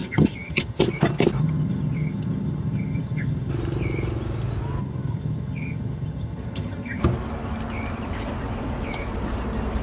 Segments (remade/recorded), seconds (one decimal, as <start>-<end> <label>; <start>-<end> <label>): 0.0-0.8 remade; 0.8-1.4 recorded; 1.4-3.5 remade; 3.5-4.8 recorded; 4.8-7.0 remade; 7.0-9.8 recorded